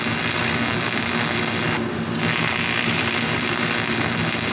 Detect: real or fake real